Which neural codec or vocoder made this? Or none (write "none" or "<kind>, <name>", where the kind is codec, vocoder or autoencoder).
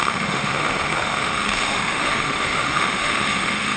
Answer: autoencoder, DAC-VAE